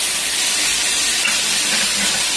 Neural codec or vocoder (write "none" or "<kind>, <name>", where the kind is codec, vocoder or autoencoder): none